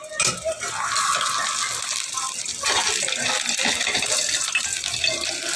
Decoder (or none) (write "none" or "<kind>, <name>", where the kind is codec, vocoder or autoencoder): none